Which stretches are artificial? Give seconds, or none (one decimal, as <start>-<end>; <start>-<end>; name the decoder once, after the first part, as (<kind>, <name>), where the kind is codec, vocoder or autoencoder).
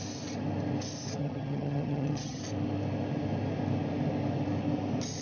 1.2-2.4 (vocoder, HiFi-GAN)